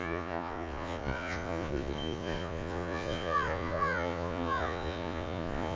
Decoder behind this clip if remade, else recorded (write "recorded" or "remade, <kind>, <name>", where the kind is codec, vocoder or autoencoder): remade, vocoder, Vocos